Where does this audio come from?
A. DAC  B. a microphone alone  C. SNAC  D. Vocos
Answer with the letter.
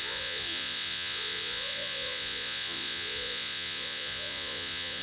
D